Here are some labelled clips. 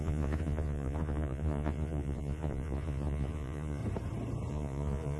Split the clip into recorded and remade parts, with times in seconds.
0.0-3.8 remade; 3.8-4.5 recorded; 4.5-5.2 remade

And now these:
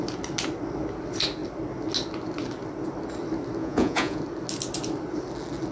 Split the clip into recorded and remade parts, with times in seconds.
0.0-3.6 recorded; 3.6-4.2 remade; 4.2-5.7 recorded

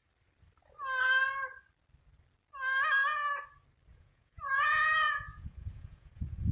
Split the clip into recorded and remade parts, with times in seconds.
0.0-3.9 recorded; 3.9-6.5 remade

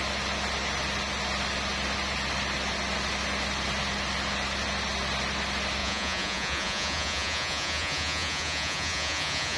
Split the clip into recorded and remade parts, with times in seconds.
0.0-5.8 recorded; 5.8-9.6 remade

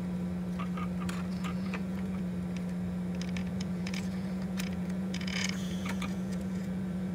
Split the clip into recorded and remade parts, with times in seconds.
0.0-1.3 recorded; 1.3-2.2 remade; 2.2-3.4 recorded; 3.4-7.1 remade